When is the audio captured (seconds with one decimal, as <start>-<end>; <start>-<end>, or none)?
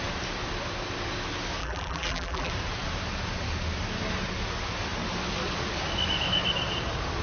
0.0-1.6; 2.5-7.2